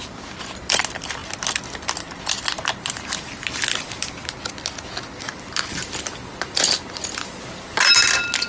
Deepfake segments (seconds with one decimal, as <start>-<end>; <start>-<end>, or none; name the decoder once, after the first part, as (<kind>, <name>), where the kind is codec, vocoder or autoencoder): none